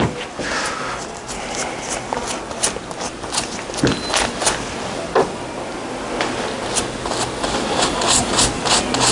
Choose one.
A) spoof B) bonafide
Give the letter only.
B